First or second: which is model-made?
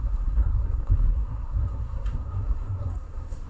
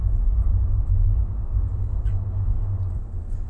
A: first